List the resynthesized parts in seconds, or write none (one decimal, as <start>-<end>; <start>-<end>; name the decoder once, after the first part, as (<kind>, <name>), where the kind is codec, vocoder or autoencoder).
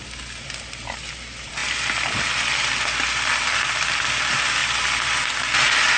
none